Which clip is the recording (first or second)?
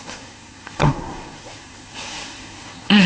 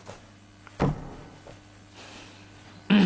second